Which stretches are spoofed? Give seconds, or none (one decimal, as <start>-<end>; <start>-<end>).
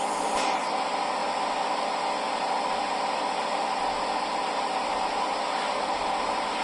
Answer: none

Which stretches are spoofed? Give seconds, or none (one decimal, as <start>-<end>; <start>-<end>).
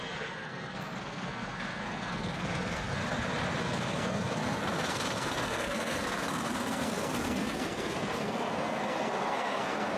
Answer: 0.0-3.0; 3.6-10.0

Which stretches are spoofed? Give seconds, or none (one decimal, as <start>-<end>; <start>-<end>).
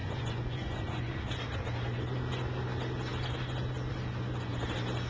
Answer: 0.0-1.1